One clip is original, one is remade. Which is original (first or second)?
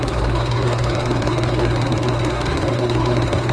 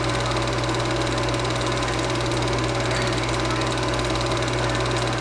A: second